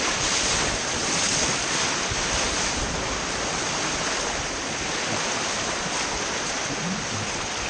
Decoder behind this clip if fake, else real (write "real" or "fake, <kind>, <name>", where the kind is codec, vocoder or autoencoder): real